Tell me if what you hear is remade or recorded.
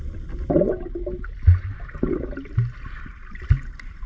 recorded